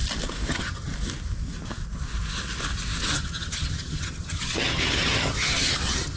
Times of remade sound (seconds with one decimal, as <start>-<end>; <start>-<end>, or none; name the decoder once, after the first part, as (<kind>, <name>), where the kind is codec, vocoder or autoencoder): 0.5-0.9 (vocoder, HiFi-GAN); 3.1-6.2